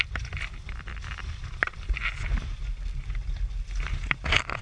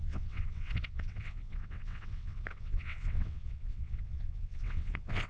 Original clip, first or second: first